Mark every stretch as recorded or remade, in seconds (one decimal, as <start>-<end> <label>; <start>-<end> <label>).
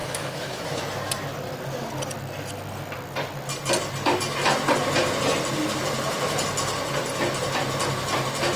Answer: 0.0-0.8 remade; 0.8-8.6 recorded